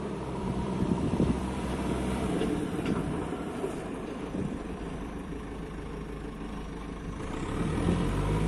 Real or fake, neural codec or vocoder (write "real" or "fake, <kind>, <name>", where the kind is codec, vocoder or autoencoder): fake, vocoder, BigVGAN v2